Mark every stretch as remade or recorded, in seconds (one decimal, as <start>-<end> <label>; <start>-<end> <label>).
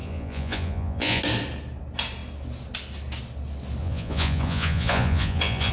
0.0-1.2 remade; 1.2-3.8 recorded; 3.8-5.7 remade